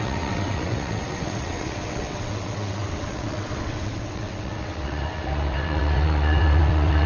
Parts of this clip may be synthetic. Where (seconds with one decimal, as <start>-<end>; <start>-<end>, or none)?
0.0-7.1